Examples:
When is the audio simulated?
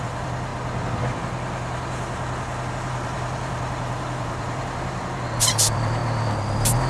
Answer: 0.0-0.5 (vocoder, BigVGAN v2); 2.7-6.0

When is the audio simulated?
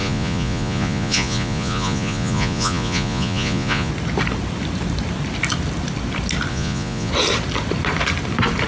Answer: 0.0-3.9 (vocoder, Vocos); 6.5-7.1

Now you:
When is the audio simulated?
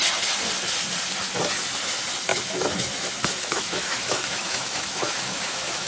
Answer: 2.3-5.9 (autoencoder, DAC-VAE)